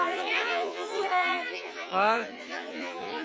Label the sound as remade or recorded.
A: remade